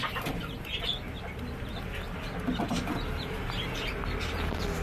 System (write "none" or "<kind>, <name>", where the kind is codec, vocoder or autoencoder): none